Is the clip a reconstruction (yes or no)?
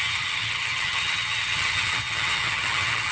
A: yes